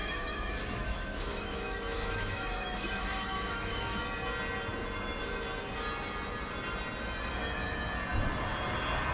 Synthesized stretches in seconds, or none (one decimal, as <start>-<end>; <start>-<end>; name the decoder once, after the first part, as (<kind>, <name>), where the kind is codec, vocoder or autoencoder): 0.0-4.0 (autoencoder, DAC-VAE)